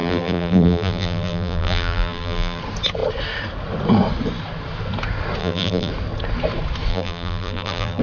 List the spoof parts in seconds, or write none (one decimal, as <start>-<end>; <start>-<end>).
0.0-2.6; 5.4-5.9; 6.9-8.0